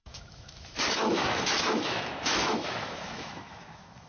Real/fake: fake